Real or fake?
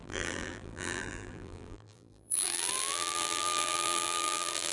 fake